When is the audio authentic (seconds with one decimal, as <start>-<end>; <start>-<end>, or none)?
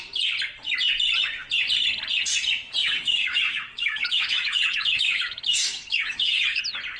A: 0.0-2.8; 6.6-7.0